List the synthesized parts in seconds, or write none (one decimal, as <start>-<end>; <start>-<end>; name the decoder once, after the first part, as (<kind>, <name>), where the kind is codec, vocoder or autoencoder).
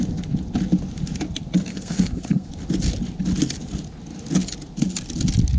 1.7-2.5 (codec, SNAC)